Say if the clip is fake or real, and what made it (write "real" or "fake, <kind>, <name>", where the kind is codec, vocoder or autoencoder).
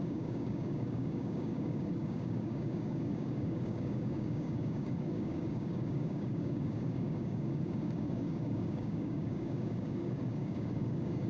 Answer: fake, codec, DAC